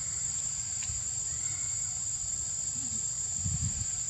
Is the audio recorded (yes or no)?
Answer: no